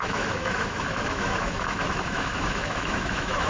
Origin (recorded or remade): remade